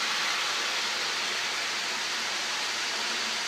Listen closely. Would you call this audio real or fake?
real